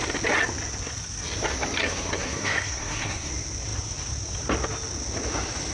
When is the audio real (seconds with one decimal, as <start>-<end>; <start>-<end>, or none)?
0.0-1.8; 3.3-5.7